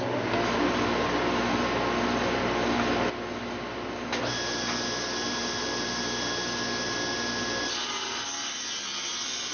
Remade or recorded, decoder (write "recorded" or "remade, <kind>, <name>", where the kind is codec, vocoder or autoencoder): recorded